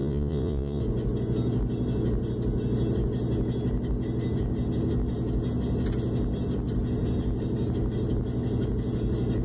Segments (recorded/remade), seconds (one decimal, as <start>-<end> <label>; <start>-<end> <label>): 0.0-0.8 remade; 0.8-9.4 recorded